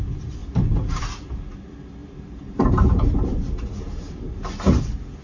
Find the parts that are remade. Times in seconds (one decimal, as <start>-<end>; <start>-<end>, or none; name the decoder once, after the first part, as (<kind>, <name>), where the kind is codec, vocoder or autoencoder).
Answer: 0.4-1.0 (vocoder, BigVGAN v2); 2.0-3.9